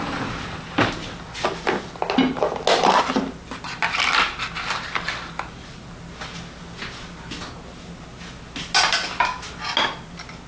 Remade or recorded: recorded